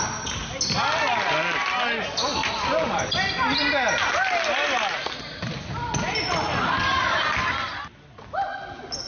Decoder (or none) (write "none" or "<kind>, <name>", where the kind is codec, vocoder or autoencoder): none